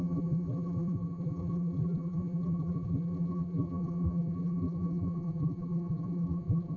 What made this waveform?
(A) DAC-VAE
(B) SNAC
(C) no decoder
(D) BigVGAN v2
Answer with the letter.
D